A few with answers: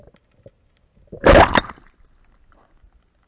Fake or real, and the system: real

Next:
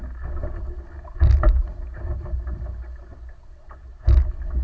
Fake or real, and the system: real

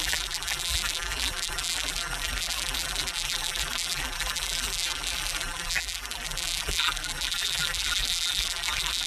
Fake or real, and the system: fake, vocoder, BigVGAN v2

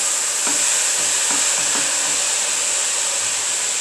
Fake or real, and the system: real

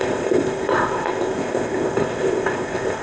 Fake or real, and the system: fake, codec, ZipCodec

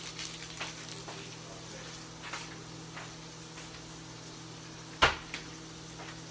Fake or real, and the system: real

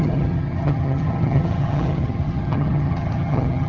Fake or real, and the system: fake, vocoder, HiFi-GAN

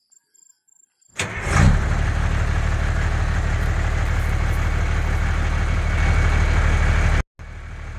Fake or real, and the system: real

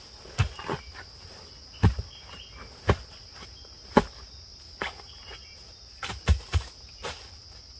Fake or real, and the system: real